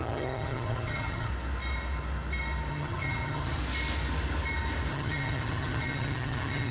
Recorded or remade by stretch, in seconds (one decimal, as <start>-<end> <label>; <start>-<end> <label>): 0.0-1.3 remade; 1.3-2.7 recorded; 2.7-3.6 remade; 3.6-4.9 recorded; 4.9-6.7 remade